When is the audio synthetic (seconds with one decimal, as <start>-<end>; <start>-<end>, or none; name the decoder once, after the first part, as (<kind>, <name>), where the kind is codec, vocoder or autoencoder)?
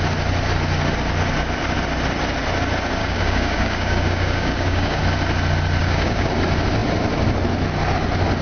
3.0-5.0 (codec, DAC); 5.8-6.3